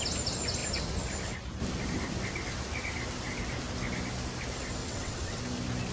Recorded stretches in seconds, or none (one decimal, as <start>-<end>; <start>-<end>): 0.0-4.8; 5.4-5.9